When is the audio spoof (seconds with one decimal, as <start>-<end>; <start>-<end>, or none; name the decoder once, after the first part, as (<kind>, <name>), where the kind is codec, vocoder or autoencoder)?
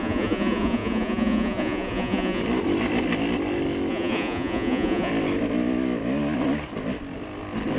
0.0-2.4 (vocoder, Vocos); 3.9-5.1